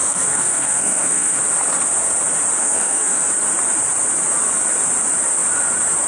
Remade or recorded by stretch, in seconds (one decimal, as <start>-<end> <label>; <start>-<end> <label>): 0.0-1.4 remade; 1.4-2.6 recorded; 2.6-3.3 remade; 3.3-6.1 recorded